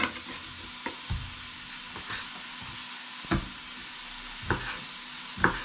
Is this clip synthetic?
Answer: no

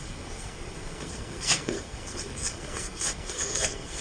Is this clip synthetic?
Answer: yes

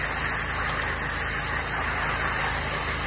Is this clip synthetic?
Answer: no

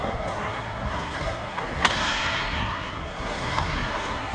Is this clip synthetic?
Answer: yes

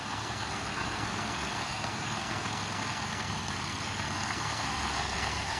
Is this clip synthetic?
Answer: yes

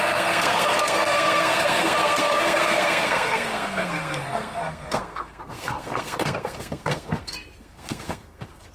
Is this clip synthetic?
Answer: yes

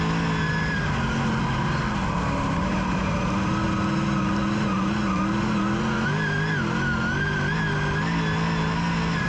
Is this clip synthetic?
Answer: no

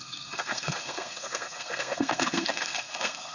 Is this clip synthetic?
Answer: yes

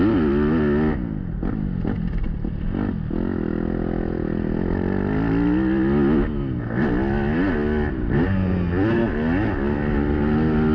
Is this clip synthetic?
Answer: no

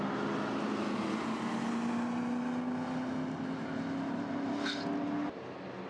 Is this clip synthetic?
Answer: no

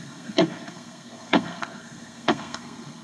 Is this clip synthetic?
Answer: yes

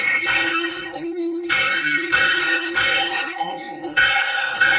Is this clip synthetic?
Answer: yes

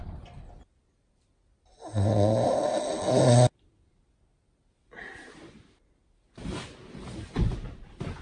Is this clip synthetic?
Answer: no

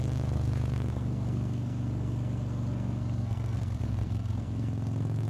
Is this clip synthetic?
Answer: yes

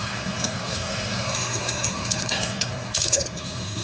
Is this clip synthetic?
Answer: yes